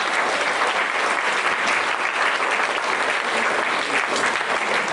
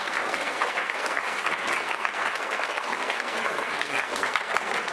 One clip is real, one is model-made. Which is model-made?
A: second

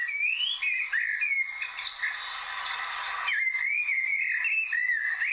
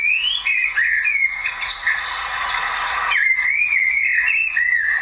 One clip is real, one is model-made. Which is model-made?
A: second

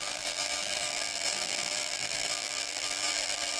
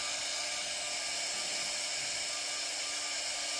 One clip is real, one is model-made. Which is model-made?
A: first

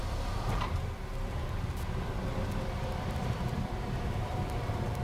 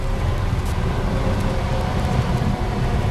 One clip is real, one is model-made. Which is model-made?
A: first